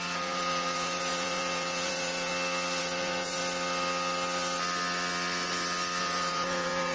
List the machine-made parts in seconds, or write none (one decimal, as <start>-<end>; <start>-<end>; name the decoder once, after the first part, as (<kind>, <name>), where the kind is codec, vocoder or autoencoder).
0.0-2.3 (vocoder, Vocos); 2.8-3.4; 6.0-6.9